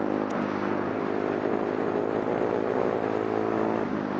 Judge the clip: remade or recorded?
recorded